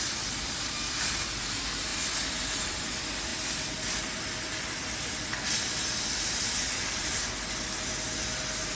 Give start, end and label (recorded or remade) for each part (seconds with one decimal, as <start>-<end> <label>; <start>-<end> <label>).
0.0-1.9 remade; 1.9-2.7 recorded; 2.7-7.2 remade; 7.2-8.7 recorded